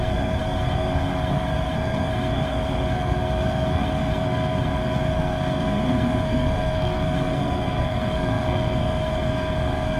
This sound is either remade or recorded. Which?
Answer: remade